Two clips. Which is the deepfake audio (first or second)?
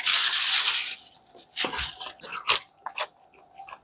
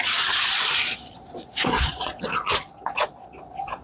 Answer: second